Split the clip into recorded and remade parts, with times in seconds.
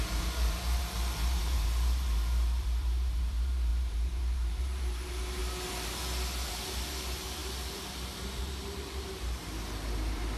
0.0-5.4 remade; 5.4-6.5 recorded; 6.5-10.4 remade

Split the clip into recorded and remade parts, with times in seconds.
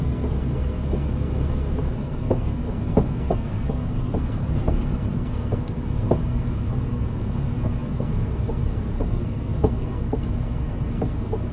0.0-11.5 remade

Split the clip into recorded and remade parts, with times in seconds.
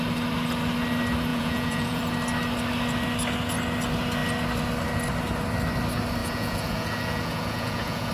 0.0-1.3 recorded; 1.3-2.0 remade; 2.0-6.2 recorded; 6.2-8.1 remade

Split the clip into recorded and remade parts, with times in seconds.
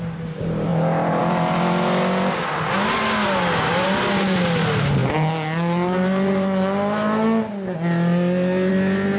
0.0-9.2 recorded